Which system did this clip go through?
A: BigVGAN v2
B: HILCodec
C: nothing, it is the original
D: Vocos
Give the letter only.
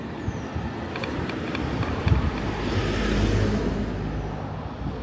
C